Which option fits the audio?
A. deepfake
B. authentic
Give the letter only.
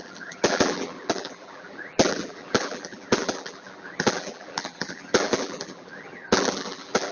A